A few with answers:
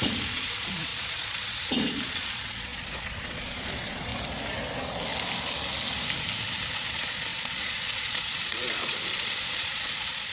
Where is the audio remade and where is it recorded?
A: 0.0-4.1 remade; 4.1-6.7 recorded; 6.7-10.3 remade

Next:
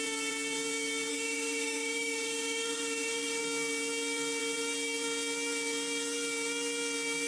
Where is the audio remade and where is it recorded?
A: 0.0-1.1 recorded; 1.1-3.4 remade; 3.4-7.3 recorded

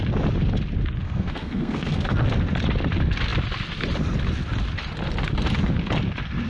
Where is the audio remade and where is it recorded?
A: 0.0-1.0 recorded; 1.0-2.2 remade; 2.2-6.5 recorded

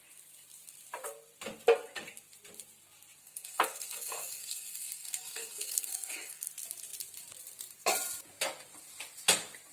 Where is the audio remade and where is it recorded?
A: 0.0-3.2 recorded; 3.2-6.5 remade; 6.5-9.7 recorded

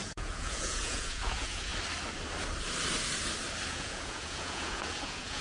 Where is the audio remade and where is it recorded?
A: 0.0-1.7 remade; 1.7-3.7 recorded; 3.7-5.4 remade

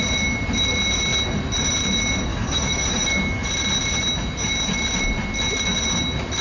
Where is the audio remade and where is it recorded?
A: 0.0-2.3 recorded; 2.3-3.5 remade; 3.5-6.4 recorded

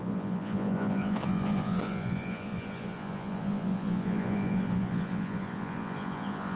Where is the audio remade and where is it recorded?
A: 0.0-6.6 remade